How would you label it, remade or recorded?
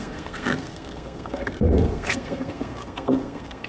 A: remade